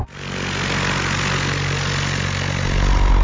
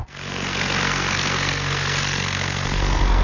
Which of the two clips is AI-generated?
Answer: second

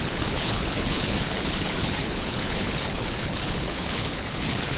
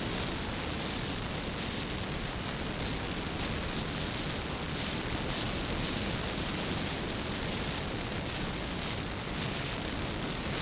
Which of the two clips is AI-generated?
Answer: first